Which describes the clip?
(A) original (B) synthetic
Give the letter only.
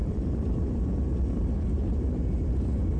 B